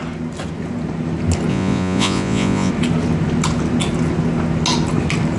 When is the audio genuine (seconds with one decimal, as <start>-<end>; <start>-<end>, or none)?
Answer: 0.0-1.5; 2.7-5.4